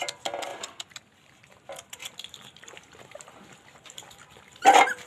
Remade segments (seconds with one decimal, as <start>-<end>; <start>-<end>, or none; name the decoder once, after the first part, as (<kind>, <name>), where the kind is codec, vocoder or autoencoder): 0.0-5.1 (vocoder, BigVGAN v2)